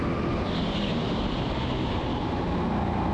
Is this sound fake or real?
real